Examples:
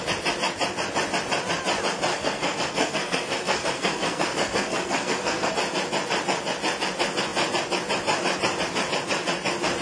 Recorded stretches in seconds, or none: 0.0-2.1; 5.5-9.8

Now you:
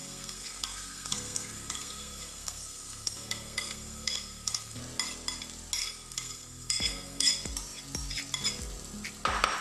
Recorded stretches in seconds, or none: 4.8-5.8; 7.3-9.6

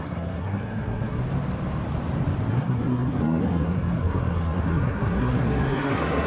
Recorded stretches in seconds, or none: 1.2-2.5

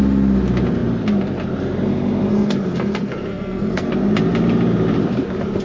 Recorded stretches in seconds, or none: 0.0-2.3; 3.9-5.6

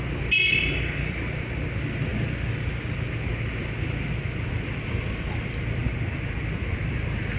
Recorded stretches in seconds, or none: 0.0-7.4

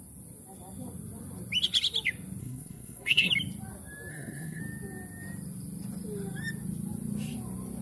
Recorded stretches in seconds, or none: 0.0-2.4; 3.3-4.1; 4.6-7.8

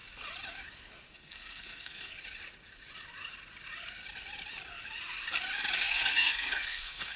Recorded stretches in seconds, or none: 0.0-1.1; 2.1-5.8

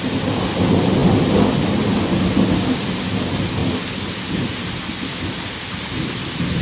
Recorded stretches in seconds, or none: 0.0-6.6